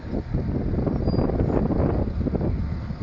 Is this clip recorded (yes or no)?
yes